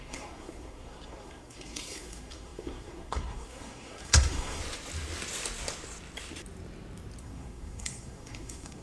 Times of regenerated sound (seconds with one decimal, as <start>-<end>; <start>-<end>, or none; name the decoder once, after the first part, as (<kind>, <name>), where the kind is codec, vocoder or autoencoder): 0.0-4.6 (codec, SNAC); 7.2-8.8